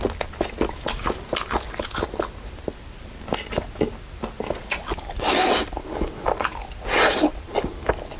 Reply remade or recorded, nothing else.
recorded